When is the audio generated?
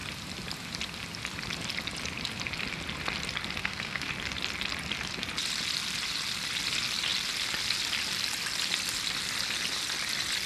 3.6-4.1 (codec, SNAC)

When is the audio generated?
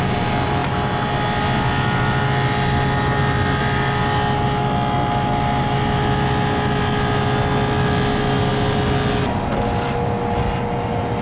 none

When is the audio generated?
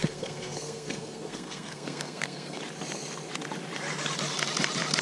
0.0-2.6 (codec, SNAC)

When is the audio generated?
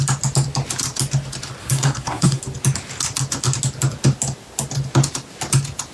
1.6-2.4 (codec, SNAC)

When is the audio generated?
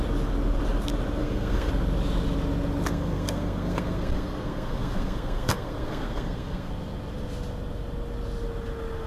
1.2-1.7 (codec, SNAC); 2.9-6.7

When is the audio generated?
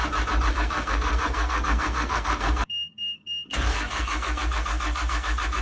0.5-5.6 (codec, SNAC)